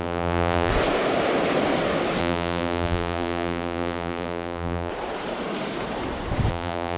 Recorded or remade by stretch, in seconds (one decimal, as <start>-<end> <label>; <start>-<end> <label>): 0.0-0.7 remade; 0.7-2.2 recorded; 2.2-4.9 remade; 4.9-6.5 recorded; 6.5-7.0 remade